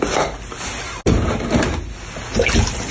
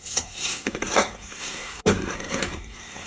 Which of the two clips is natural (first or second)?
first